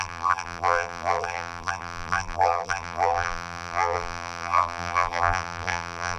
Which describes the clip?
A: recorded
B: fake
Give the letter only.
B